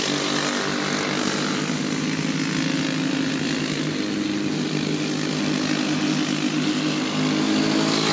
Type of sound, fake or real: real